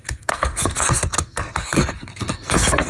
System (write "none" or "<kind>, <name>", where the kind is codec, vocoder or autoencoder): codec, SNAC